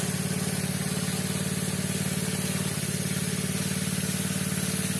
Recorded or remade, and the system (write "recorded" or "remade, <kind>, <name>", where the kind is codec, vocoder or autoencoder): recorded